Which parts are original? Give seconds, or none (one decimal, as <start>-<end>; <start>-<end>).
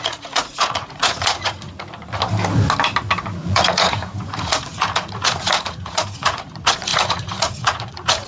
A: 1.9-3.2